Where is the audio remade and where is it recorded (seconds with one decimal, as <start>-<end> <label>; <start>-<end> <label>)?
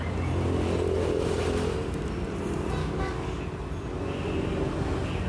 0.0-2.8 recorded; 2.8-3.4 remade; 3.4-5.3 recorded